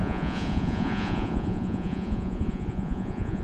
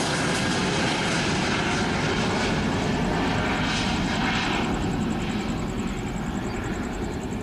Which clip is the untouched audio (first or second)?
second